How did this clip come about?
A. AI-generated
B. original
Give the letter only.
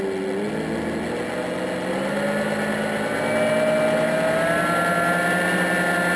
B